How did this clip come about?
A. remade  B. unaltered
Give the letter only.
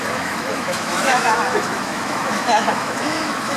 A